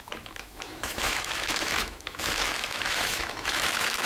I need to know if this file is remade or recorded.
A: remade